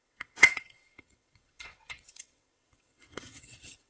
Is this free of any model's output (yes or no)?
no